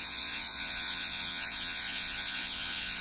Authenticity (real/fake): fake